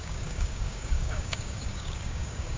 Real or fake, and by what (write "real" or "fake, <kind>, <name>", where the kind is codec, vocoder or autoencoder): fake, codec, DAC